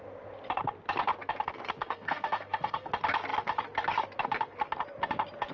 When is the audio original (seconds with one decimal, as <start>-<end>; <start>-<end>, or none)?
0.0-1.8; 2.9-5.5